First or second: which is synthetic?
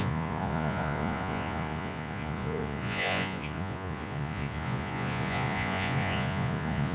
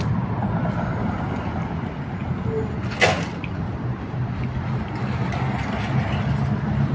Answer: first